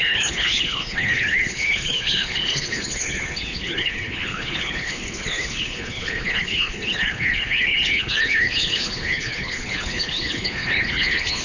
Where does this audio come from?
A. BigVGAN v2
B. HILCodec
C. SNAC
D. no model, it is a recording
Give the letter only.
B